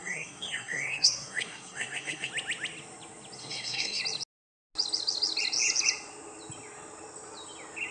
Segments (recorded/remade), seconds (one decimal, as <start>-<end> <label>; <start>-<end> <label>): 0.0-2.3 remade; 2.3-3.4 recorded; 3.4-4.0 remade; 4.0-7.9 recorded